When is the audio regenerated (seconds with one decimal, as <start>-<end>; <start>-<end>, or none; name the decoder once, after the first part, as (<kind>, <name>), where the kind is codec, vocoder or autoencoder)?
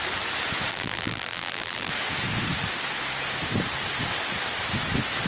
0.7-1.9 (vocoder, BigVGAN v2)